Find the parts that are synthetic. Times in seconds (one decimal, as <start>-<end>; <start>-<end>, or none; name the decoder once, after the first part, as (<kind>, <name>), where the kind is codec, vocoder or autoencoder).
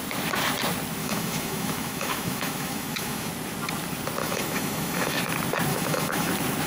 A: 1.0-3.3 (autoencoder, DAC-VAE); 4.2-5.2; 5.7-6.3